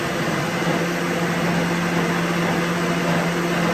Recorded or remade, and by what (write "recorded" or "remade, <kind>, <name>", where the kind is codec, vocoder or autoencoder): recorded